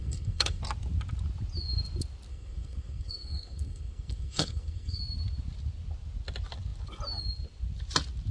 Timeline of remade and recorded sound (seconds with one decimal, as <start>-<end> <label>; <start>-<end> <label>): 0.0-0.6 remade; 0.6-2.3 recorded; 2.3-5.0 remade; 5.0-8.3 recorded